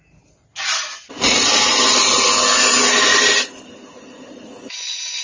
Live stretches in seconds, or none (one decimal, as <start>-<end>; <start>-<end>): 0.0-5.2